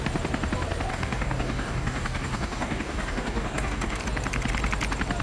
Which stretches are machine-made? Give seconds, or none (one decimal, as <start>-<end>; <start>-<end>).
0.9-4.0